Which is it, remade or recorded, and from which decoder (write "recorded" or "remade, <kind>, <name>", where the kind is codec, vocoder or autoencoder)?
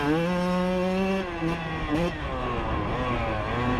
recorded